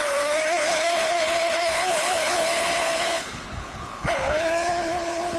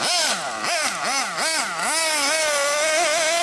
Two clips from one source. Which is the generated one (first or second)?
first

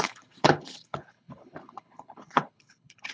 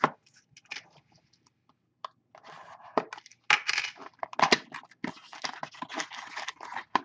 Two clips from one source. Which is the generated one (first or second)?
first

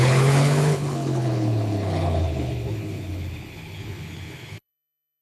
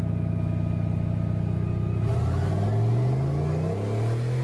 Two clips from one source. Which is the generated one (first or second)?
first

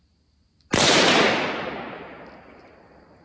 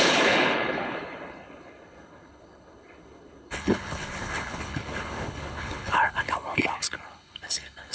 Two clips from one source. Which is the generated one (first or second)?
second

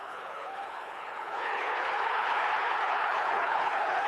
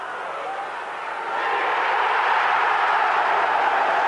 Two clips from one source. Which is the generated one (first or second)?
first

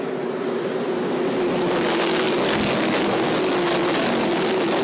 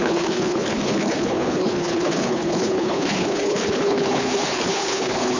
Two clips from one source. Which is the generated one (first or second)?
second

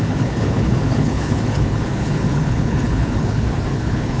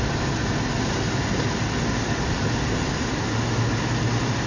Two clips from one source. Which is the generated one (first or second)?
first